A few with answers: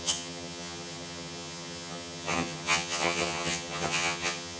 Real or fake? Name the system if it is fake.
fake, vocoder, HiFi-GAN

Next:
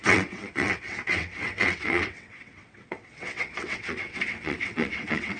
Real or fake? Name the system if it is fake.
fake, vocoder, WaveNeXt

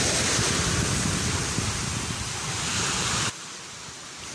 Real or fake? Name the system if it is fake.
real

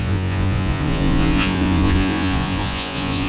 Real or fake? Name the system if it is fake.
fake, vocoder, Vocos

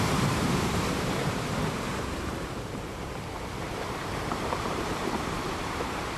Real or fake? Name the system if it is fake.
fake, vocoder, BigVGAN v2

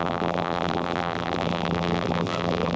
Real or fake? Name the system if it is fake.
fake, vocoder, BigVGAN v2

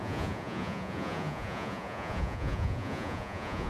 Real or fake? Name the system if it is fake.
fake, vocoder, Vocos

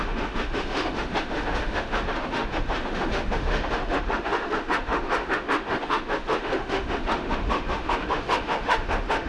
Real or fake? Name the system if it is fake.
fake, autoencoder, DAC-VAE